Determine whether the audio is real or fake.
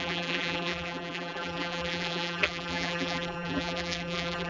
fake